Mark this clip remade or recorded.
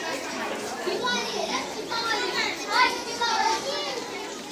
recorded